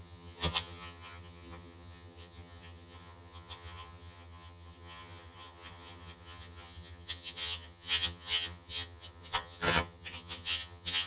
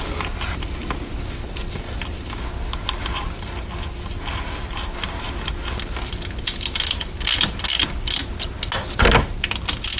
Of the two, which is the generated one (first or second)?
first